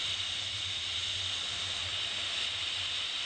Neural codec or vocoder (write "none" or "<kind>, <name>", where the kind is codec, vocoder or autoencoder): none